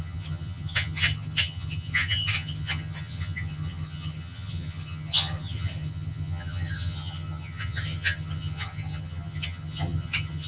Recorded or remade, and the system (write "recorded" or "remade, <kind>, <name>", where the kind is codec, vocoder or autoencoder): remade, vocoder, HiFi-GAN